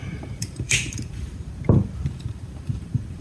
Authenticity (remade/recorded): remade